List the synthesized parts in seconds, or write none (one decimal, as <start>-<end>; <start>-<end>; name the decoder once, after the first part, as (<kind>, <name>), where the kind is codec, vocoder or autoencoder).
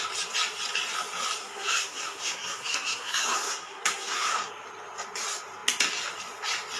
1.4-4.5 (codec, SNAC)